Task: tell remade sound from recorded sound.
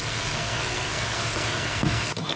remade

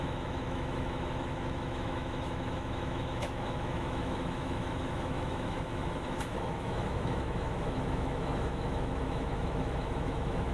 remade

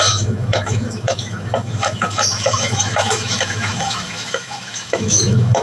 remade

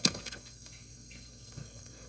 remade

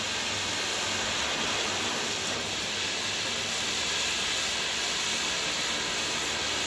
recorded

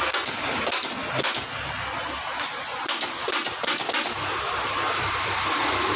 recorded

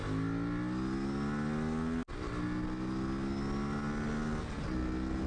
recorded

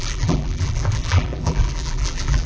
remade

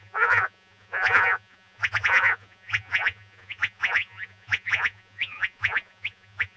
remade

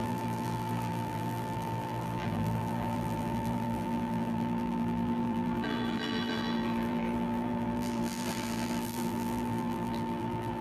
remade